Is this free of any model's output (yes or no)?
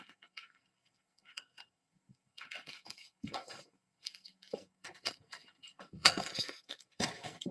no